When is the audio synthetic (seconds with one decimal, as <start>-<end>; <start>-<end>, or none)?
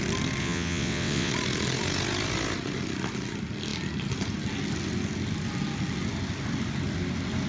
0.4-1.3